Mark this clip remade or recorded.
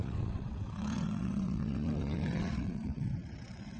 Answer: remade